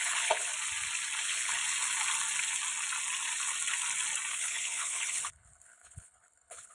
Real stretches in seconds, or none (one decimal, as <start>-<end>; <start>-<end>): 0.5-1.2; 1.6-4.3